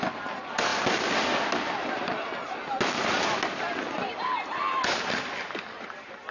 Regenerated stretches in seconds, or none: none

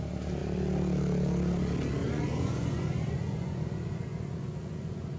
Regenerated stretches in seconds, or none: 2.0-5.2 (vocoder, Vocos)

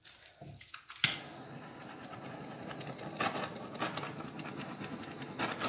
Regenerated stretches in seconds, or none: none

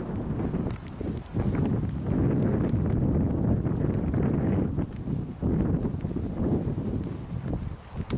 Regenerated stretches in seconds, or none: none

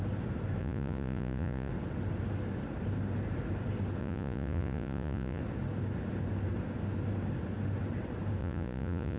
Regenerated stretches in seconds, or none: 0.6-1.7 (vocoder, Vocos); 4.0-5.4; 8.4-9.2